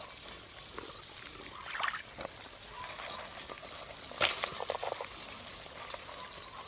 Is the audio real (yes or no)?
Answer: yes